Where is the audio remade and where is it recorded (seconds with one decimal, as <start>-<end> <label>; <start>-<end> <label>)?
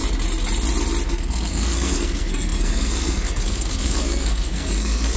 0.0-1.1 recorded; 1.1-5.2 remade